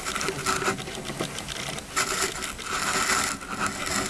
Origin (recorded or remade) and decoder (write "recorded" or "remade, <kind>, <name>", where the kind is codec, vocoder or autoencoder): recorded